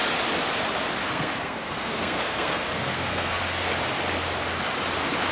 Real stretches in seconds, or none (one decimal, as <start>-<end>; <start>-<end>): 0.0-1.0; 3.4-5.3